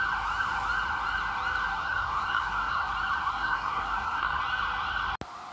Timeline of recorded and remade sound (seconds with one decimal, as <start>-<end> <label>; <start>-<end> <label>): 0.0-1.7 recorded; 1.7-2.9 remade; 2.9-3.3 recorded; 3.3-4.4 remade; 4.4-5.5 recorded